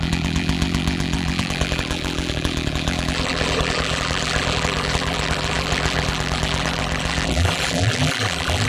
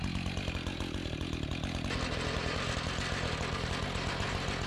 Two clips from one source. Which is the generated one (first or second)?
first